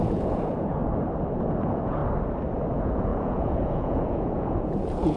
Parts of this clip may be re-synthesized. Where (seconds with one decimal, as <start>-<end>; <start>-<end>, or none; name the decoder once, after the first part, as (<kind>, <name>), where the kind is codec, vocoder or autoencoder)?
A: 0.0-0.8 (vocoder, Vocos); 1.6-2.0; 2.7-5.2